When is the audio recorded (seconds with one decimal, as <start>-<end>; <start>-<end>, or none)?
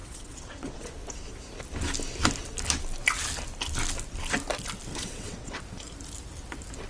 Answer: 0.9-4.9; 5.6-6.9